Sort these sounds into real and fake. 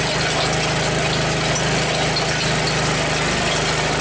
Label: real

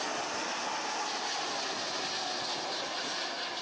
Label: real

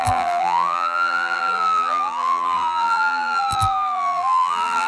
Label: fake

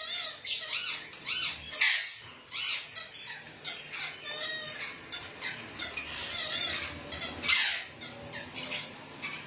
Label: real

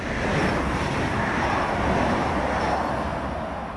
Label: real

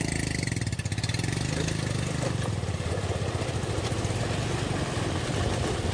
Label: real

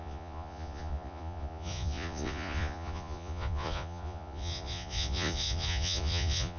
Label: fake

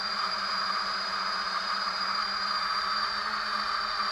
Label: fake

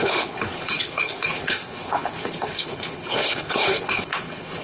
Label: fake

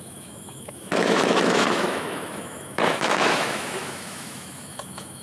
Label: fake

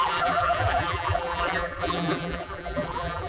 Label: fake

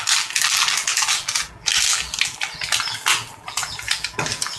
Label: fake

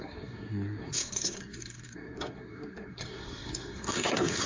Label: fake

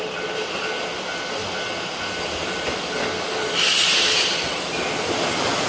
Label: real